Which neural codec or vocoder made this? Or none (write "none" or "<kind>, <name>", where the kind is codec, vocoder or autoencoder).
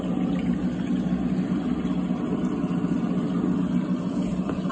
none